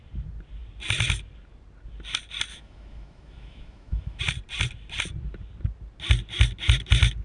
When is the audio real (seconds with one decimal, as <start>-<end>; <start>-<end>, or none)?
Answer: 0.0-2.5; 4.2-7.2